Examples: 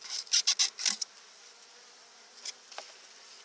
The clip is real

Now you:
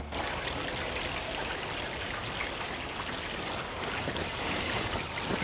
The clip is real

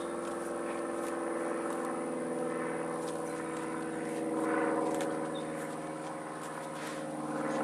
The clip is real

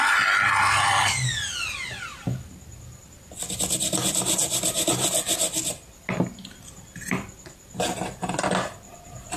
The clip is real